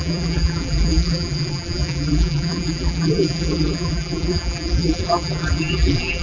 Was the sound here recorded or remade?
remade